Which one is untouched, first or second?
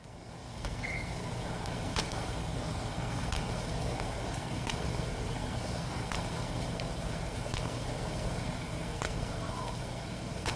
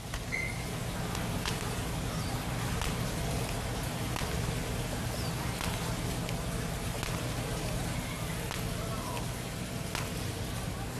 second